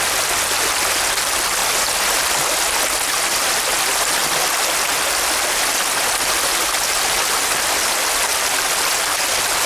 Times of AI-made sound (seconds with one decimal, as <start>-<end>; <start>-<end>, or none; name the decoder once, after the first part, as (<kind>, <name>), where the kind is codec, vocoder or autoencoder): 1.6-2.6 (vocoder, BigVGAN v2)